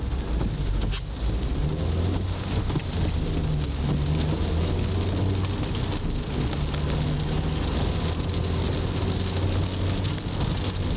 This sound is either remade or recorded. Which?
recorded